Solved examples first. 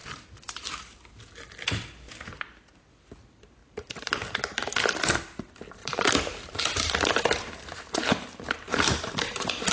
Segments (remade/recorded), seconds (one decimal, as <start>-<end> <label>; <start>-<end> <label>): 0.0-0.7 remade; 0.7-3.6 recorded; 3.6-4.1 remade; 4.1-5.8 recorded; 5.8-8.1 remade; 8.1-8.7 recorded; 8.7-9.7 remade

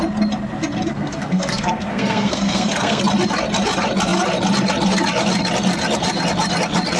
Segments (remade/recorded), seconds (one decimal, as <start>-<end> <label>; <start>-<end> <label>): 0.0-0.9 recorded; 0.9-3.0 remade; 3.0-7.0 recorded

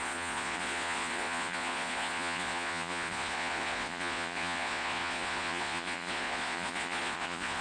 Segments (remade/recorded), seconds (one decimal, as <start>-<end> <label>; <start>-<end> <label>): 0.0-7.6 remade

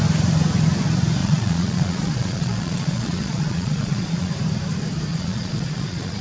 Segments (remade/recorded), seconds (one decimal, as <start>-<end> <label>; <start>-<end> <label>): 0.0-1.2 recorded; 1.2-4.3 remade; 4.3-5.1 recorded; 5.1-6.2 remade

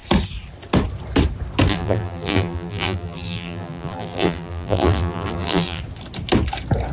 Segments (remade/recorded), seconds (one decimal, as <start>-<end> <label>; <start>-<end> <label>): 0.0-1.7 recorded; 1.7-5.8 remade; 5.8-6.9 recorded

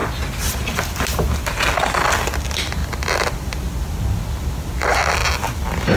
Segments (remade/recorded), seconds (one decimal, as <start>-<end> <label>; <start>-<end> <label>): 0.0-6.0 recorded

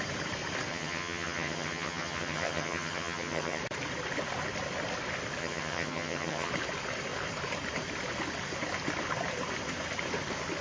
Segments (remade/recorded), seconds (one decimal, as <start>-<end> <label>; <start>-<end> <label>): 0.0-0.7 recorded; 0.7-3.6 remade; 3.6-5.4 recorded; 5.4-6.5 remade; 6.5-10.6 recorded